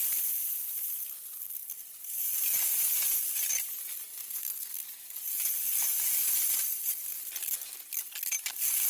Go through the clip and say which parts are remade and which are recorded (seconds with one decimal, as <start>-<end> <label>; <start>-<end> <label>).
0.0-4.1 recorded; 4.1-4.8 remade; 4.8-8.9 recorded